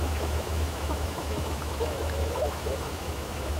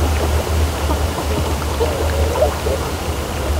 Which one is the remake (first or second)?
first